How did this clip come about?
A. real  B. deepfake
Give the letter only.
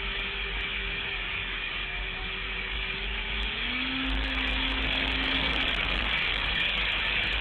B